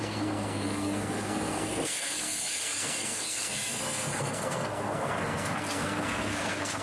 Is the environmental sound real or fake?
fake